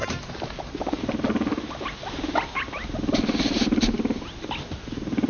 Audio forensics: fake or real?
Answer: real